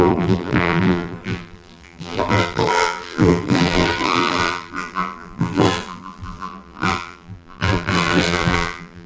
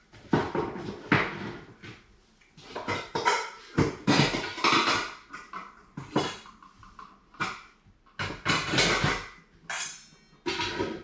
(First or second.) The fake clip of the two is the first